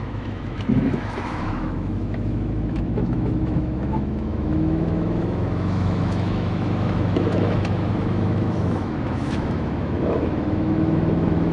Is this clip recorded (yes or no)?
no